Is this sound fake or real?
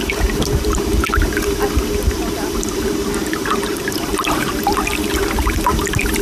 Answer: fake